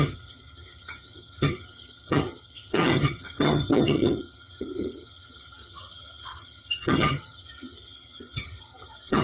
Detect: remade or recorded remade